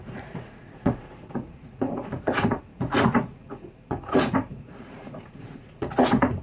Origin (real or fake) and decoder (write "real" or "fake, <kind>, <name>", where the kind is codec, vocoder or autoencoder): fake, vocoder, Vocos